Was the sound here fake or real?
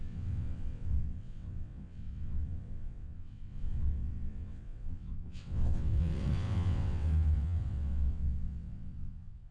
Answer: fake